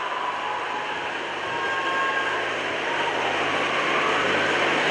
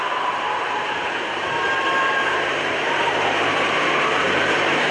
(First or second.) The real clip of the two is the first